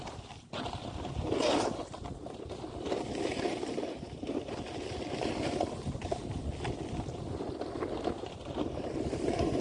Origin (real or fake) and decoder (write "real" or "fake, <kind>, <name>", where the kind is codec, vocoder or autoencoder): real